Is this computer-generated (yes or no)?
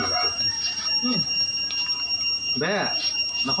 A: no